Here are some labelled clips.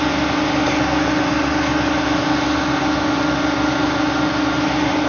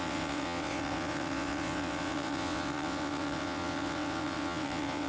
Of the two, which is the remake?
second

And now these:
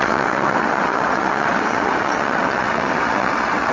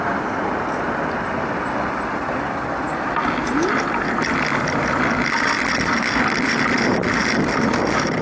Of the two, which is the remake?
first